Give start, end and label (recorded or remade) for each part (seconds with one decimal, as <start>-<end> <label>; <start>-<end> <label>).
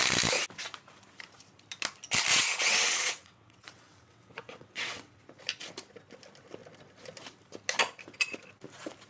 0.0-2.3 recorded; 2.3-5.2 remade; 5.2-9.1 recorded